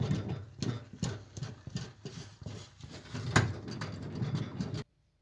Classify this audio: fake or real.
real